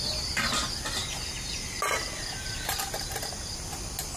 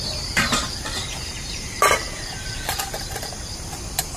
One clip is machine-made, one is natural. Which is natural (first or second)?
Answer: first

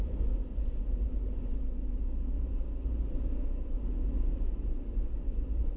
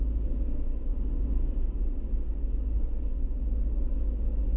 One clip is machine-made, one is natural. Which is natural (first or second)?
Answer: second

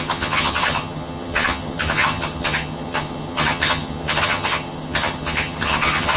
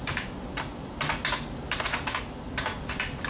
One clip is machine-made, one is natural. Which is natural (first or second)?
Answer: second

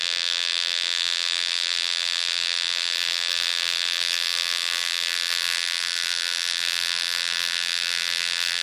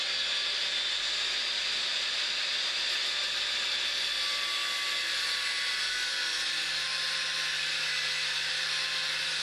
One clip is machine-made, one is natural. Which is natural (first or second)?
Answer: second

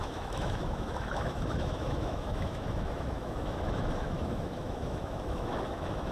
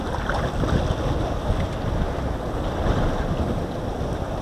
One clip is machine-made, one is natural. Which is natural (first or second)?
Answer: second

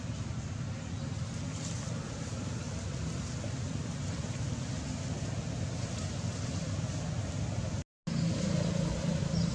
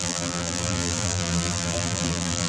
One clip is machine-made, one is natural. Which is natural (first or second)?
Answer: first